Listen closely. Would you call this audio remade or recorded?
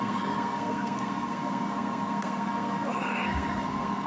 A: remade